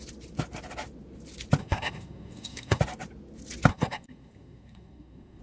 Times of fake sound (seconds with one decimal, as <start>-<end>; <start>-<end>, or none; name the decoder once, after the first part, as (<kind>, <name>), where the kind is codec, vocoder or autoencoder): 1.6-2.8 (codec, SNAC); 3.7-5.4

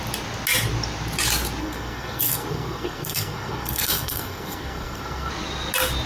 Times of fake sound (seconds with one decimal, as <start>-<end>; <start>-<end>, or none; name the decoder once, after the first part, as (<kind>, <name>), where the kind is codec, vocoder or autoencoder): 1.6-5.3 (codec, SNAC)

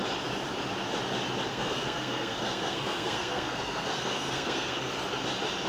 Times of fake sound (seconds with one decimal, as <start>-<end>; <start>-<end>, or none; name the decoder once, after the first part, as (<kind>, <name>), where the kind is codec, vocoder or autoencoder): 1.5-4.9 (codec, SNAC)

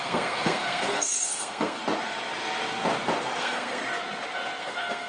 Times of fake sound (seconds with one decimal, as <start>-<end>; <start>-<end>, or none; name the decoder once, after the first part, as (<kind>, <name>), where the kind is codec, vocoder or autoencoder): 0.0-1.8 (codec, SNAC); 3.4-3.8; 4.6-5.1

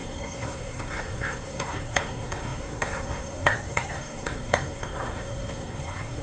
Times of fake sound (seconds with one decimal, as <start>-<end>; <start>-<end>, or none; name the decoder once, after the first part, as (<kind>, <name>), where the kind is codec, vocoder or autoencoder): 0.0-6.2 (codec, SNAC)